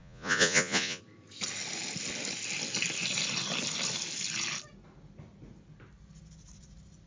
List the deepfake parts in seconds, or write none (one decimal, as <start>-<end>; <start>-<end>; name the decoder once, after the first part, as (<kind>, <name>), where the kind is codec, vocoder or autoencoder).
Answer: 0.0-1.0 (vocoder, Vocos)